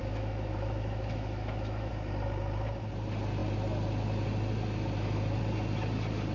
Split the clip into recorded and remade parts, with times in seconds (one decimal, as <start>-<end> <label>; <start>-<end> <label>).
0.0-1.9 remade; 1.9-6.3 recorded